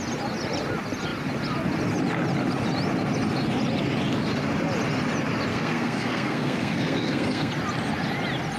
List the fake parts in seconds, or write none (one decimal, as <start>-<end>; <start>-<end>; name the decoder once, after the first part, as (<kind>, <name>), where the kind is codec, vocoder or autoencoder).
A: 5.5-7.5 (codec, SNAC)